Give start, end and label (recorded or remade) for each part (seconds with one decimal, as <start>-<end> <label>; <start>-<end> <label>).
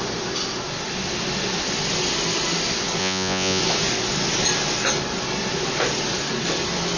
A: 0.0-3.0 recorded; 3.0-3.6 remade; 3.6-7.0 recorded